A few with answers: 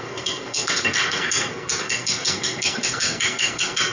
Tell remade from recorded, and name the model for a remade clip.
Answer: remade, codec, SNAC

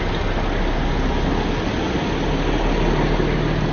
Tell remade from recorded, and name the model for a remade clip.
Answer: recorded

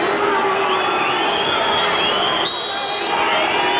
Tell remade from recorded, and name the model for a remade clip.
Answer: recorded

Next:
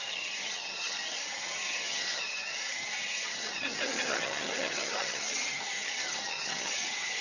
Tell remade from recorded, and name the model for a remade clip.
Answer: remade, vocoder, HiFi-GAN